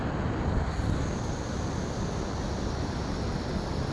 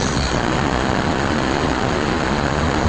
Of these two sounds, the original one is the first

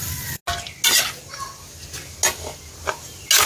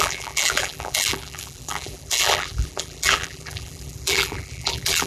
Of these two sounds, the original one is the first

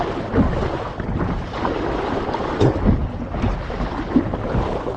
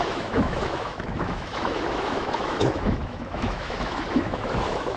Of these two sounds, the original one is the first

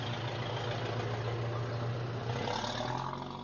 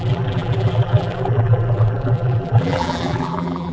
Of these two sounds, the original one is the first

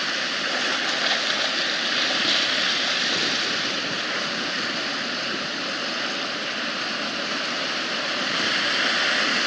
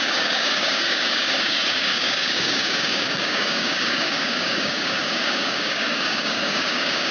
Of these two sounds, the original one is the first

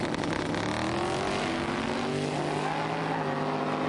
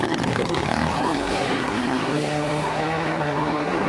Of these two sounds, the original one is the first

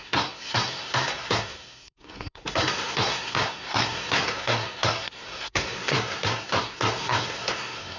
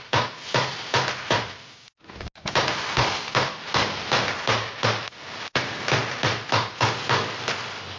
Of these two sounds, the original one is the second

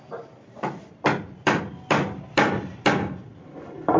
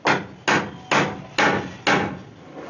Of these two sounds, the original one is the second